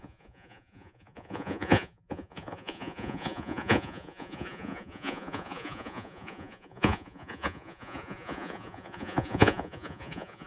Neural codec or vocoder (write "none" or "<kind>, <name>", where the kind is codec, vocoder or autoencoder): vocoder, Vocos